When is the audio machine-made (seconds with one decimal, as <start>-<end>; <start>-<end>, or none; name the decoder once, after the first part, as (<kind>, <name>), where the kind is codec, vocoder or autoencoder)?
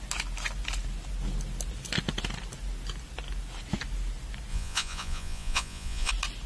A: 4.5-6.1 (vocoder, Vocos)